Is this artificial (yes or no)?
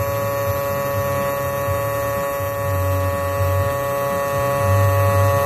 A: no